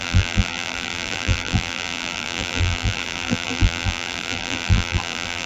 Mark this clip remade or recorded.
remade